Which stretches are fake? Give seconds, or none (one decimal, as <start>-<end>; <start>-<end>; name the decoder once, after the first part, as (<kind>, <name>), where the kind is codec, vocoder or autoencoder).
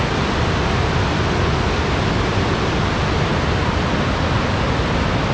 none